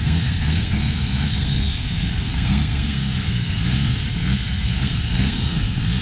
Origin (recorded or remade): remade